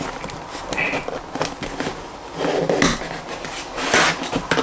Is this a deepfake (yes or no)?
no